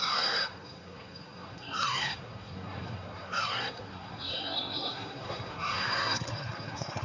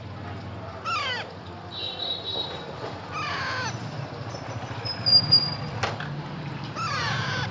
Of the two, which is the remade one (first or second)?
first